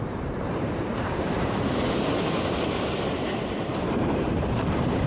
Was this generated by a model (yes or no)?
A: yes